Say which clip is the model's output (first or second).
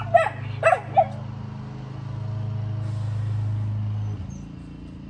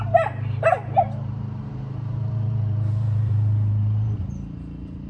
second